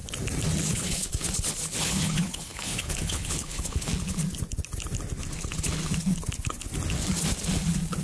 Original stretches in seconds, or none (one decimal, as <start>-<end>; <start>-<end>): 0.0-0.7; 1.1-1.8; 3.9-8.0